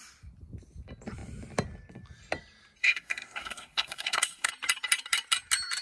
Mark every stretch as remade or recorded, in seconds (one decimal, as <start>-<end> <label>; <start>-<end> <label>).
0.0-2.8 recorded; 2.8-4.5 remade; 4.5-5.8 recorded